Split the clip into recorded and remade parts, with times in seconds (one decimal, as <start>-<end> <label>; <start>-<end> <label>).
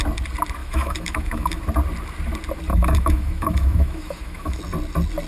0.0-0.6 recorded; 0.6-1.6 remade; 1.6-2.7 recorded; 2.7-4.6 remade; 4.6-5.3 recorded